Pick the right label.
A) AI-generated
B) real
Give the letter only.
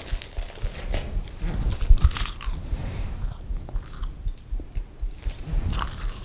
B